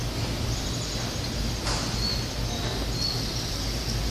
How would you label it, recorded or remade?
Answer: recorded